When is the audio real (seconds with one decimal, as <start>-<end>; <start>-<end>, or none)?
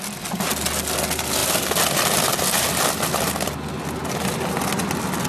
0.0-5.3